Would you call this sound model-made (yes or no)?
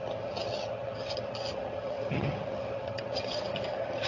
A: yes